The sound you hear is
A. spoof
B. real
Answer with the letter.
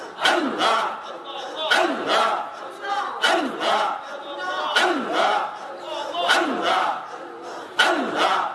B